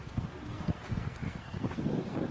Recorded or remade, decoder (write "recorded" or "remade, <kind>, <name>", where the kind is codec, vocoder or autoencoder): remade, codec, SNAC